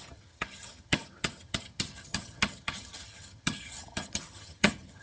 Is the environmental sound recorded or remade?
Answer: remade